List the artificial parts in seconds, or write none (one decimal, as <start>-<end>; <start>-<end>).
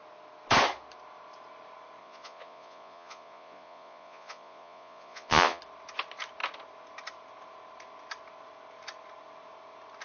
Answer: 2.0-5.6